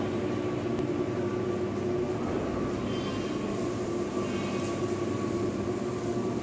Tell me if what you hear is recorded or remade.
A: recorded